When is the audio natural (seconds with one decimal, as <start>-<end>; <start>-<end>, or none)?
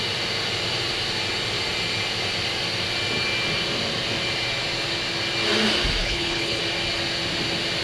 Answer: 0.0-6.0; 6.6-7.8